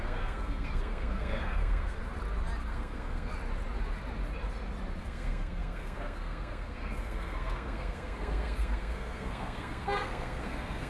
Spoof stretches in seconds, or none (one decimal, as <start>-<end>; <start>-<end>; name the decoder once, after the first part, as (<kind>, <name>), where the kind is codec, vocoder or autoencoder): 0.0-2.0 (codec, SNAC); 2.6-3.3; 5.0-10.9